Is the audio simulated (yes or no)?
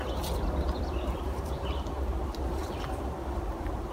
yes